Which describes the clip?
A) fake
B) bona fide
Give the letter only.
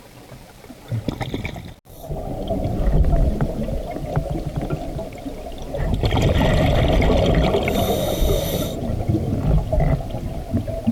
B